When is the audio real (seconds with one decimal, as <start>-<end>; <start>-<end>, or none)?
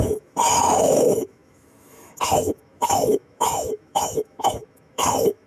none